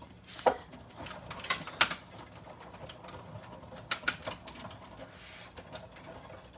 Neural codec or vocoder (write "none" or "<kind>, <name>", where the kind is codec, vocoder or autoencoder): none